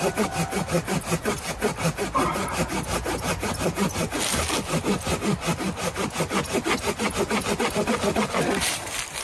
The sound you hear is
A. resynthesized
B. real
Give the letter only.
B